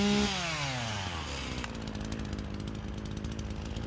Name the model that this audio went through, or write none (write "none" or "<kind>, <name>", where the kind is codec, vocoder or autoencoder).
none